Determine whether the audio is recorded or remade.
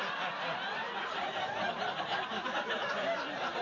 recorded